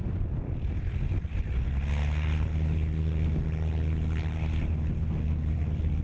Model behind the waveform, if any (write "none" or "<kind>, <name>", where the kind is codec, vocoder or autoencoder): none